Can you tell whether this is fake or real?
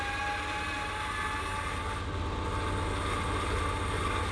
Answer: real